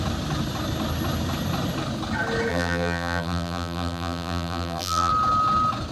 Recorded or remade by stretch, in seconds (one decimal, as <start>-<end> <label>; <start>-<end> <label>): 0.0-2.5 recorded; 2.5-5.1 remade; 5.1-5.9 recorded